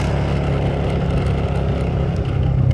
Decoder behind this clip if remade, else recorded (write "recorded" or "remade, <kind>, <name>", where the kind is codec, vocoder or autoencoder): recorded